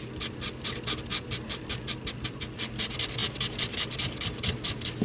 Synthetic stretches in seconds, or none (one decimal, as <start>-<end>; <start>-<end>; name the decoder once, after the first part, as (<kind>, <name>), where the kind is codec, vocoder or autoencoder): none